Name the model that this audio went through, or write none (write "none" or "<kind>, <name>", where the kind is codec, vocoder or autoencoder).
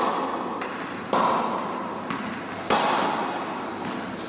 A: none